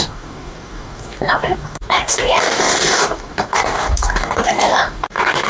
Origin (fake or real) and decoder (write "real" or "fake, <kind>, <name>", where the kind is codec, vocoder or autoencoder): fake, codec, DAC